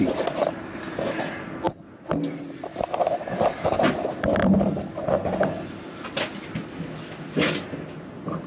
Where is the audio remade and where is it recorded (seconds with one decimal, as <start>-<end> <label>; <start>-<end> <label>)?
0.0-8.5 recorded